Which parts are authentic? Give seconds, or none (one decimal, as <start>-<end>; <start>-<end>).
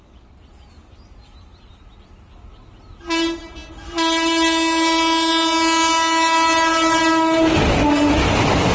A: 0.0-8.7